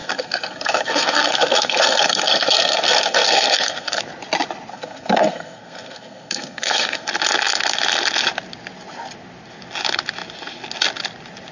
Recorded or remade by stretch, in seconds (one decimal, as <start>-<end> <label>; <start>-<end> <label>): 0.0-4.0 remade; 4.0-4.7 recorded; 4.7-7.1 remade; 7.1-11.5 recorded